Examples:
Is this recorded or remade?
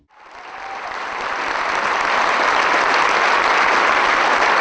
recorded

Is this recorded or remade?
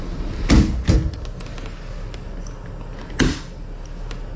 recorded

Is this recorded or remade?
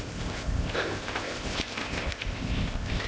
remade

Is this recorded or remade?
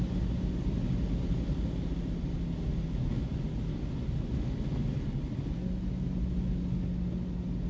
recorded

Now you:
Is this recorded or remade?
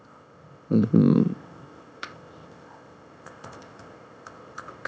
remade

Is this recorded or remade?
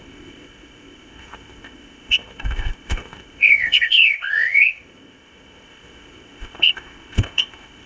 remade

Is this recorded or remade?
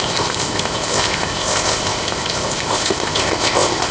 remade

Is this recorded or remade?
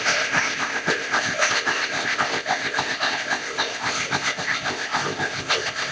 remade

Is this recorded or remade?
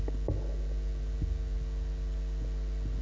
recorded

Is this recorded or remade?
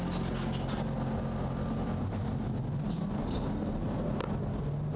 recorded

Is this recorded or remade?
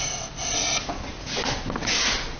recorded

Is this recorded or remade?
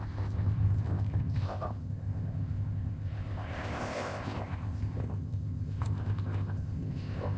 remade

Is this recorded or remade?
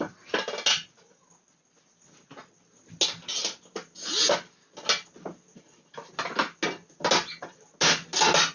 recorded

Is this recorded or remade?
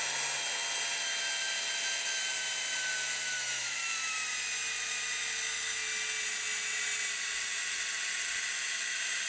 recorded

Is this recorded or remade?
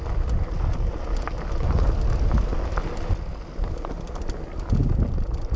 recorded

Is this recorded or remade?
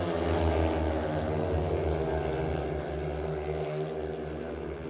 recorded